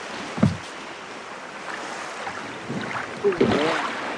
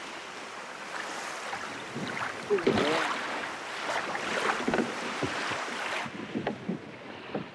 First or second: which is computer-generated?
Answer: second